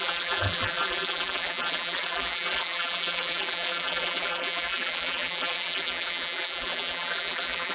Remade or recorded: remade